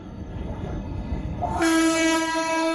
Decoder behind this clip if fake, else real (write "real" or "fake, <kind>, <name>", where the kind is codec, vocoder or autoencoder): fake, codec, SNAC